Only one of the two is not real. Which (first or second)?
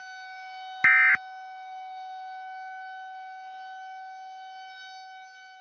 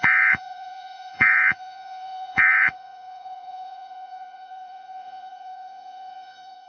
second